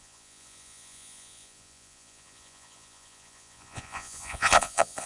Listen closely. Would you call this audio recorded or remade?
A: remade